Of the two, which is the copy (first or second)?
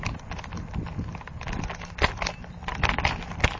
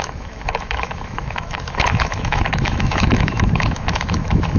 second